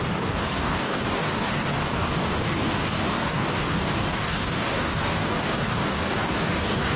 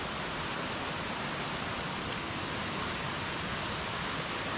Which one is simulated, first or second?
first